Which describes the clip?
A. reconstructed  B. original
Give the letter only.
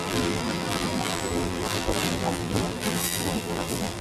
A